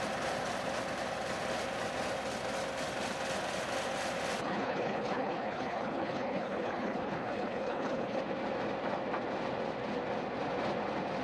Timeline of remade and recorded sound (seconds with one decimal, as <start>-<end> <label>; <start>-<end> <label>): 0.0-4.4 recorded; 4.4-8.2 remade; 8.2-11.2 recorded